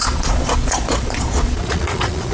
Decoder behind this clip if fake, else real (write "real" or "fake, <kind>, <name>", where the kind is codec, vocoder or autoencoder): fake, vocoder, Vocos